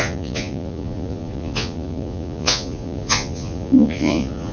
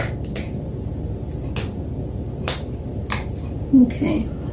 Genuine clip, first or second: second